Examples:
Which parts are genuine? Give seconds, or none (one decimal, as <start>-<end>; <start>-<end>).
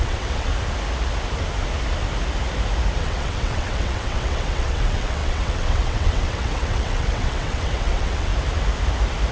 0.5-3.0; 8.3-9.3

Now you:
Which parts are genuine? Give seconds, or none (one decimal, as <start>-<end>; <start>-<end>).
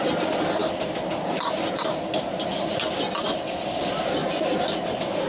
0.0-5.3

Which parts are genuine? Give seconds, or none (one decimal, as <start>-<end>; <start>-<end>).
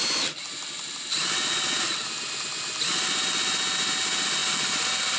0.0-5.2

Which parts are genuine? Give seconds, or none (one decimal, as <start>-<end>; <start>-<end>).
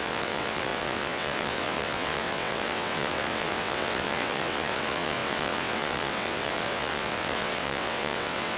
none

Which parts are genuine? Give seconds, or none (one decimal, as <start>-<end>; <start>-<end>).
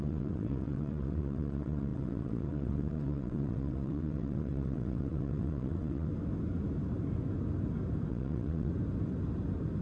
6.1-8.1; 8.7-9.8